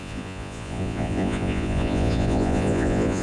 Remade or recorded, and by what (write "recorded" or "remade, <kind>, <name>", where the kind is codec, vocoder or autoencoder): remade, vocoder, Vocos